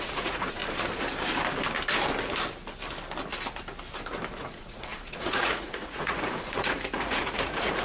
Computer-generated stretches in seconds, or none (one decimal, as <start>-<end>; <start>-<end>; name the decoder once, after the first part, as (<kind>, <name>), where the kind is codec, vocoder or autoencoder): 0.0-0.6 (vocoder, Vocos); 4.4-7.8